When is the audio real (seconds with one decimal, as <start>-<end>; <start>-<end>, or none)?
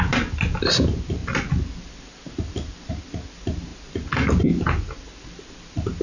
0.0-6.0